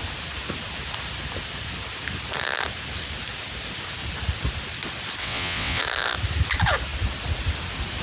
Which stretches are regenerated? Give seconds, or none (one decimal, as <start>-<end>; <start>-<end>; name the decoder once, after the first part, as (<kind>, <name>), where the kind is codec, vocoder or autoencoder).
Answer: 5.2-5.8 (vocoder, WaveNeXt)